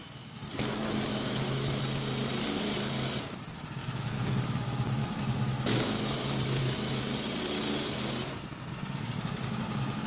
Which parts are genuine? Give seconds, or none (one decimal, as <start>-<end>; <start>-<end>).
0.0-1.1; 1.8-3.8; 4.5-5.0; 7.0-10.1